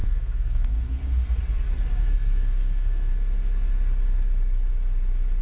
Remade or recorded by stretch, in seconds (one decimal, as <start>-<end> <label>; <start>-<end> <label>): 0.0-1.4 remade; 1.4-2.0 recorded; 2.0-3.1 remade; 3.1-5.4 recorded